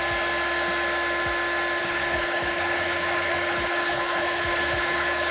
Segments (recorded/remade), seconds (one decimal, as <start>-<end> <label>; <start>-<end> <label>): 0.0-1.8 recorded; 1.8-5.3 remade